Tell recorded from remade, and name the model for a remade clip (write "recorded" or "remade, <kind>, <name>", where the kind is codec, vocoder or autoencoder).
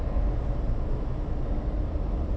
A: recorded